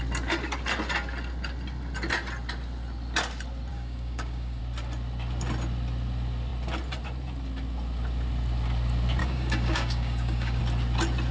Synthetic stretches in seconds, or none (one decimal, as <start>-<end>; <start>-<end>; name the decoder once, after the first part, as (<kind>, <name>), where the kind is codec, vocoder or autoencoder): 3.7-4.6 (codec, DAC); 9.2-10.6